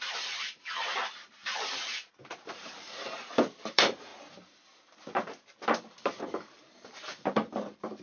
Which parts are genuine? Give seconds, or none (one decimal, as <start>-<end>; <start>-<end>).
4.1-5.8